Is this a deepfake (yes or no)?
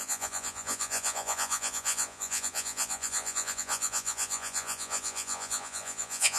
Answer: yes